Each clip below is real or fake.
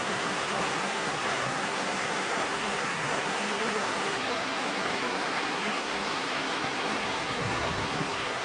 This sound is fake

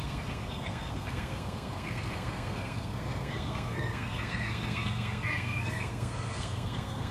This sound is fake